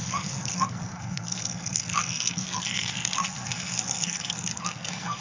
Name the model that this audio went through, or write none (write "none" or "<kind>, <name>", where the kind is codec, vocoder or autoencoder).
codec, SNAC